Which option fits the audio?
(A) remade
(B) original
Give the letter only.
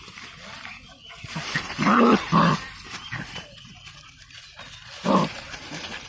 A